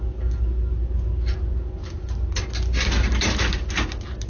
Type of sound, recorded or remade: recorded